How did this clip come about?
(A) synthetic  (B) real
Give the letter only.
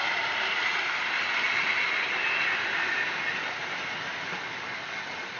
B